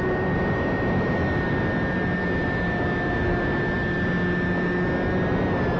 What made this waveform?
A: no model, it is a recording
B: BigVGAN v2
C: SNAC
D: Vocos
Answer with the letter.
A